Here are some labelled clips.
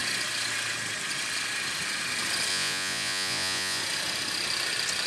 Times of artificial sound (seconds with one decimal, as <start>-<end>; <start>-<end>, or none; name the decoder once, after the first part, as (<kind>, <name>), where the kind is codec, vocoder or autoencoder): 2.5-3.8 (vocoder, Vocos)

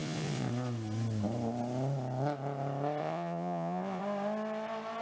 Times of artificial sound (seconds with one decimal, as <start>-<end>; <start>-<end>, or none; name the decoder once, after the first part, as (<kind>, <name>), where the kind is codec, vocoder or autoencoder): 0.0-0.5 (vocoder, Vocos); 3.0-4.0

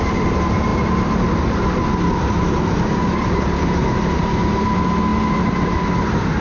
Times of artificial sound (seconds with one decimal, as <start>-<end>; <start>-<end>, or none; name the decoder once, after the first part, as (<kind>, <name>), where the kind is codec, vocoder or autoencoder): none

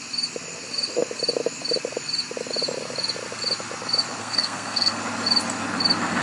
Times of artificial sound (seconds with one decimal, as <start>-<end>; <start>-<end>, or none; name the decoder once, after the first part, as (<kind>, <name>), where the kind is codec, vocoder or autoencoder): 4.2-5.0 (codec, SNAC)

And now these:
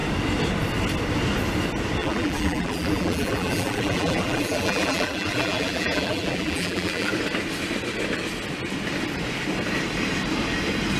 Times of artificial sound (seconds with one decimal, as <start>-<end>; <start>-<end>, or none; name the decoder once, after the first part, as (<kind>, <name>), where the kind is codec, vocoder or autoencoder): 2.0-7.1 (vocoder, BigVGAN v2)

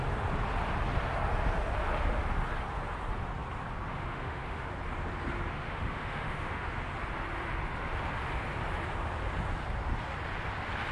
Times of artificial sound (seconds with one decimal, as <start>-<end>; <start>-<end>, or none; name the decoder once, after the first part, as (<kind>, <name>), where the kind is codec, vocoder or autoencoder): 3.9-4.7 (autoencoder, DAC-VAE); 5.5-6.7

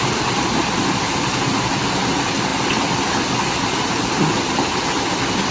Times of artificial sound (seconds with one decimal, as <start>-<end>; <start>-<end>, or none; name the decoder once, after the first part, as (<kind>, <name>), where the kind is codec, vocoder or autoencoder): none